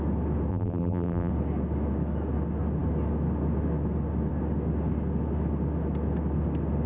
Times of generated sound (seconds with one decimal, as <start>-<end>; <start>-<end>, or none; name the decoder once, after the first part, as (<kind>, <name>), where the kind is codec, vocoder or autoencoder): 0.5-1.3 (vocoder, BigVGAN v2)